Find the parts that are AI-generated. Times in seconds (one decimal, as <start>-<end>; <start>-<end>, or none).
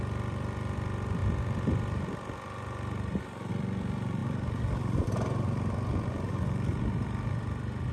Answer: 0.0-1.2; 3.5-6.7; 7.3-7.9